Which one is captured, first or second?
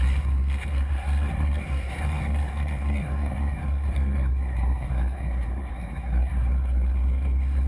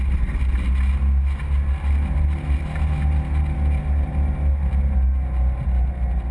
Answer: second